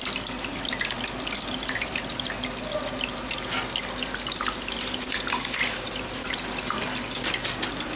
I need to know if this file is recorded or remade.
recorded